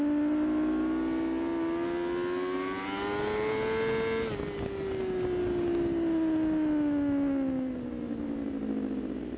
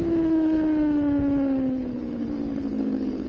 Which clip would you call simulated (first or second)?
second